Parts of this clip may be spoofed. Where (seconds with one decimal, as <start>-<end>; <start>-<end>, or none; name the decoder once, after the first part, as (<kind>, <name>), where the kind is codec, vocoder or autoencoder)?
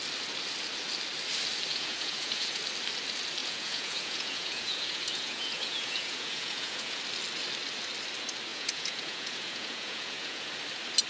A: 1.7-2.6 (vocoder, Vocos); 3.4-7.0; 8.5-10.5